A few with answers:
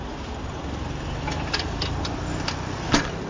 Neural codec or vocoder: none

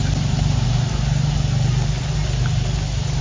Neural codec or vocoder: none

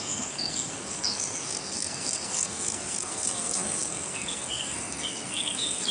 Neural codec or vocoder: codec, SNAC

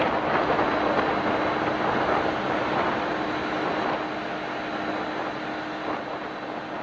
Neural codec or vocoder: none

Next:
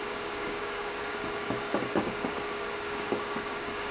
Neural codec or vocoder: codec, DAC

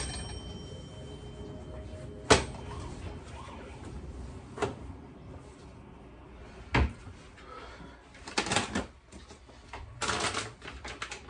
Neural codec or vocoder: none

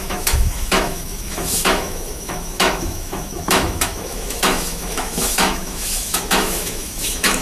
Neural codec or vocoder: autoencoder, DAC-VAE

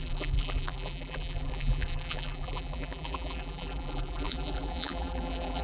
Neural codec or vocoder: vocoder, BigVGAN v2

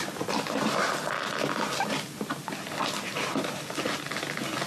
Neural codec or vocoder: none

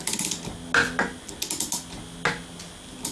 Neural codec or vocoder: none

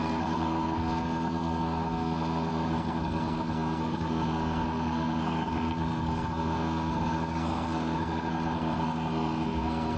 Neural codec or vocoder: codec, SNAC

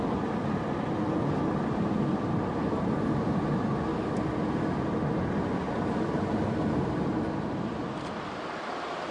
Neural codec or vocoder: none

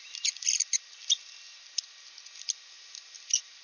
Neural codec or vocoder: none